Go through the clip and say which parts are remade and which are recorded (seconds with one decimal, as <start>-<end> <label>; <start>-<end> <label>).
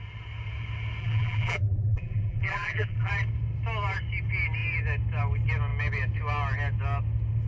0.0-1.0 recorded; 1.0-3.1 remade; 3.1-7.5 recorded